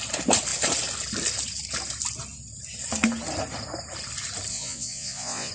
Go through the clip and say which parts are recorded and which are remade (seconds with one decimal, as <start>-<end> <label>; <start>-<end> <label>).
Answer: 0.0-4.5 recorded; 4.5-5.5 remade